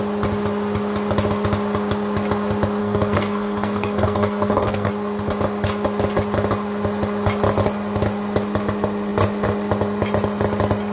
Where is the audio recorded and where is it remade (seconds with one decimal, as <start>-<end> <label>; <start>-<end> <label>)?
0.0-2.8 recorded; 2.8-4.9 remade; 4.9-10.9 recorded